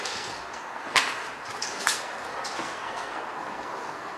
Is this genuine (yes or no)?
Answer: no